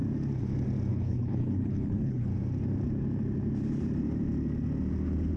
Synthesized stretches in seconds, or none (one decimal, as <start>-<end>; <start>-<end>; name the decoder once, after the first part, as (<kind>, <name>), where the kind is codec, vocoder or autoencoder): 0.9-2.3 (codec, HILCodec)